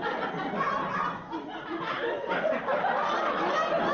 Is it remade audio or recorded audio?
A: recorded